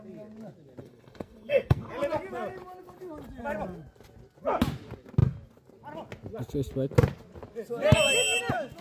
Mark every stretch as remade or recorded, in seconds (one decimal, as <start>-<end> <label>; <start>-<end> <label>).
0.0-0.8 recorded; 0.8-1.9 remade; 1.9-8.8 recorded